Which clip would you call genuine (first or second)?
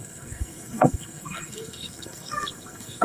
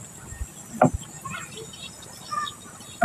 second